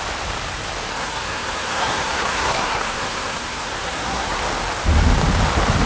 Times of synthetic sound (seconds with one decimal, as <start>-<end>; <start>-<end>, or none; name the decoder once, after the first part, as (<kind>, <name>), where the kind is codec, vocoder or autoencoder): 0.9-4.4 (codec, SNAC)